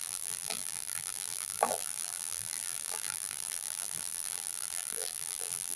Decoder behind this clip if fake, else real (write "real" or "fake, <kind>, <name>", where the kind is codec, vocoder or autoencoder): fake, vocoder, BigVGAN v2